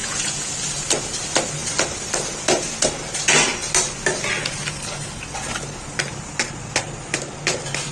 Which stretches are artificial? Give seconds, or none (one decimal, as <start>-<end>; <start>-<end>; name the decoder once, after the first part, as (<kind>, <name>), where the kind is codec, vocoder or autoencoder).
0.0-0.5 (vocoder, Vocos)